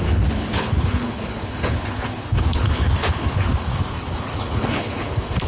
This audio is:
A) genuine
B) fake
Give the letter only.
B